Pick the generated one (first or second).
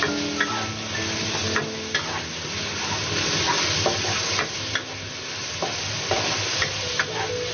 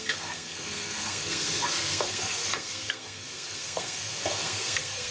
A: second